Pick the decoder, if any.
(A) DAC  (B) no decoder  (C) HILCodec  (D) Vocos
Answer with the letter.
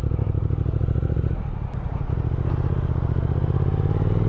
B